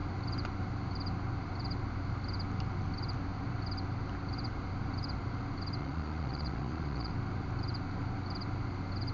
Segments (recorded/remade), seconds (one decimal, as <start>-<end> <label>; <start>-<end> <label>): 0.0-5.8 recorded; 5.8-7.1 remade; 7.1-9.1 recorded